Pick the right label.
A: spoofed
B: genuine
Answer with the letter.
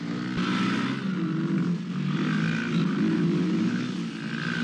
B